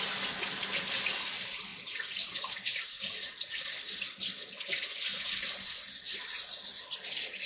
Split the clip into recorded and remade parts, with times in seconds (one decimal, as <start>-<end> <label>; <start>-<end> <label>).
0.0-7.5 recorded